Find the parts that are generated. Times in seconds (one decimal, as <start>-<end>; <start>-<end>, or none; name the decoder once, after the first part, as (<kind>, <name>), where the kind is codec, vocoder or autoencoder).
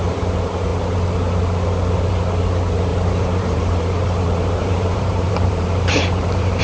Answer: 2.9-6.6 (vocoder, BigVGAN v2)